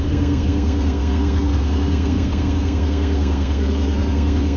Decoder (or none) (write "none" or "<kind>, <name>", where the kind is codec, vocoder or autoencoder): codec, SNAC